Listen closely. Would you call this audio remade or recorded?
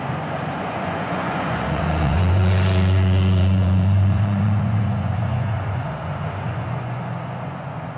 remade